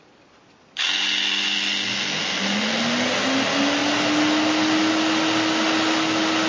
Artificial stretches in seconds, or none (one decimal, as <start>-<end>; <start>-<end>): none

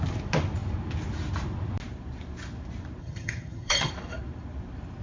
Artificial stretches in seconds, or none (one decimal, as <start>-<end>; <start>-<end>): 3.0-3.9

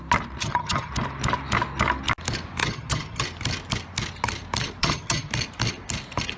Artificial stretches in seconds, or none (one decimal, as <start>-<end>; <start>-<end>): 0.4-0.9; 2.6-3.2; 4.8-5.3

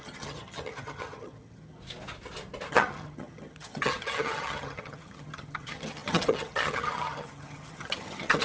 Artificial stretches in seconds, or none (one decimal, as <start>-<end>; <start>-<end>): 0.0-1.8; 2.7-8.4

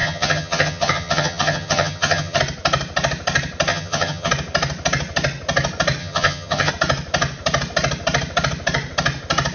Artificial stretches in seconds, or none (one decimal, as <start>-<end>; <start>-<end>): 0.0-2.4; 3.7-4.3; 6.0-6.7

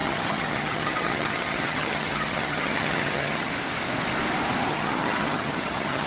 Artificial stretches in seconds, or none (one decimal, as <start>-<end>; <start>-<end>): 0.0-3.5; 4.7-6.1